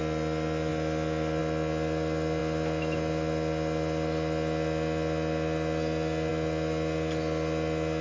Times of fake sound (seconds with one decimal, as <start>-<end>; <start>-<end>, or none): none